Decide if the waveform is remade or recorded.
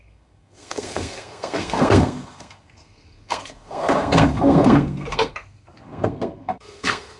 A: remade